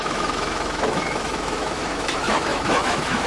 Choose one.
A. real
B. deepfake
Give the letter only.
B